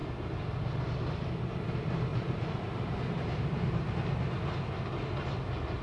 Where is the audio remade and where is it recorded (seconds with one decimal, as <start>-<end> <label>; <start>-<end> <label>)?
0.0-2.1 recorded; 2.1-3.9 remade; 3.9-5.8 recorded